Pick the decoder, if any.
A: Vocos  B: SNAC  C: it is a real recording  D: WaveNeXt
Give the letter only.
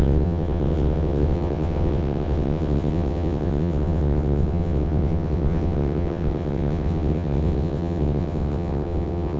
D